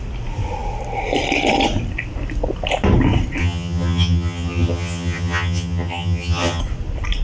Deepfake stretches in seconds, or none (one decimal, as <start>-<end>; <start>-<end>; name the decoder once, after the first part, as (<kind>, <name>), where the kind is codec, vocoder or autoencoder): 3.4-6.6 (vocoder, HiFi-GAN)